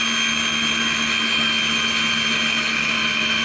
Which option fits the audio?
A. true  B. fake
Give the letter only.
A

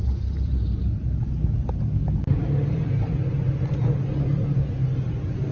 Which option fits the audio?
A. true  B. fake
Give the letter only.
A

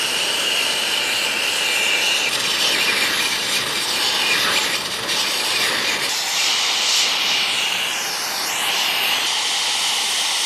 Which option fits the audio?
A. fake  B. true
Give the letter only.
B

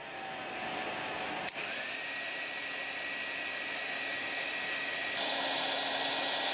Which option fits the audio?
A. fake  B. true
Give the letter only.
B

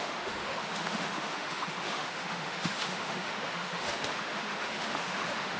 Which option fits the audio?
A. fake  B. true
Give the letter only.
A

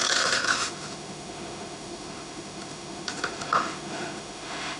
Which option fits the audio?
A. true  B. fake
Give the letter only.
B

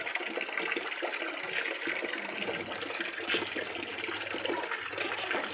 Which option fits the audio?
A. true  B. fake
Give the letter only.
A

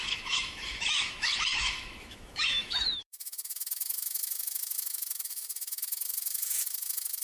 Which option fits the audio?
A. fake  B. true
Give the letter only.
A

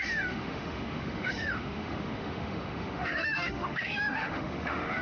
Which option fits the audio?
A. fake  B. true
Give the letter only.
A